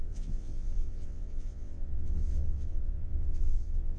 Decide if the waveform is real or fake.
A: fake